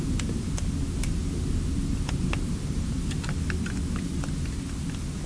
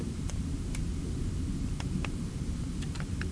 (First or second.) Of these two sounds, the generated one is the second